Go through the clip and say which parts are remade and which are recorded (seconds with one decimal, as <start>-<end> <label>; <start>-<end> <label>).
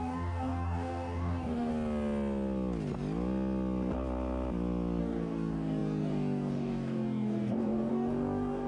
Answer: 0.0-1.7 remade; 1.7-5.0 recorded; 5.0-8.7 remade